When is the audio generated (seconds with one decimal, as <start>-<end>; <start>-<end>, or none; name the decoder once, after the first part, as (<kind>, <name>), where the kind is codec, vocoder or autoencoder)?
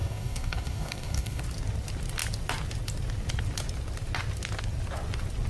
0.0-1.4 (codec, DAC)